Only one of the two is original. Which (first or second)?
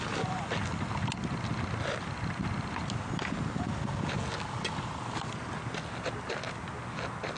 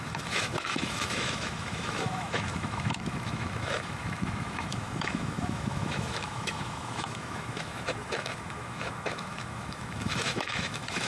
first